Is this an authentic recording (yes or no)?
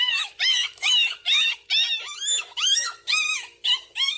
no